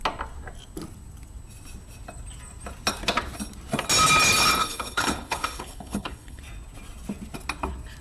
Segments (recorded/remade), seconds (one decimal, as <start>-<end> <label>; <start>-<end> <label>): 0.0-4.6 recorded; 4.6-6.4 remade; 6.4-8.0 recorded